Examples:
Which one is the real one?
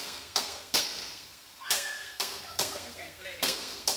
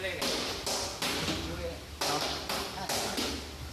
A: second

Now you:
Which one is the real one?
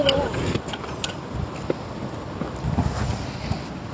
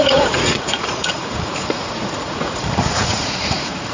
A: first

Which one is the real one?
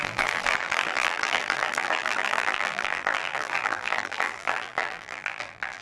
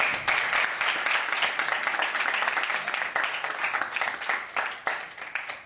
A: second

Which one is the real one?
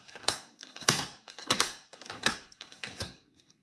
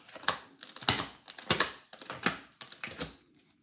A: second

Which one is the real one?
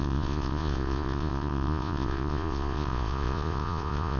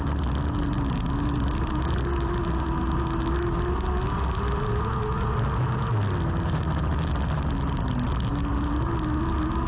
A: second